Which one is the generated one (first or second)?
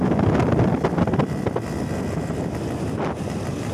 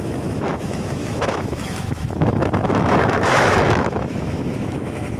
second